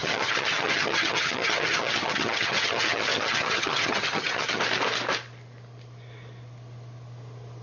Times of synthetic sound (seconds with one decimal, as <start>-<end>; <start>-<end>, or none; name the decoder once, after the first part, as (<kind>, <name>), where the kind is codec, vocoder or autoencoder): 0.0-4.6 (vocoder, HiFi-GAN)